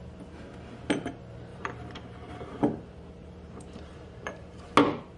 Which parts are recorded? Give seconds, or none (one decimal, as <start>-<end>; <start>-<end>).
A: 0.0-1.5; 4.6-5.2